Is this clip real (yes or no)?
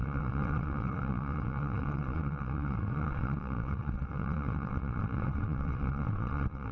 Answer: no